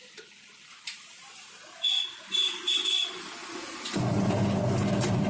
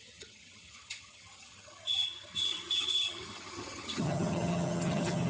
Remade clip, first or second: second